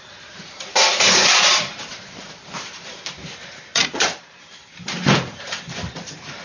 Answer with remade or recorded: remade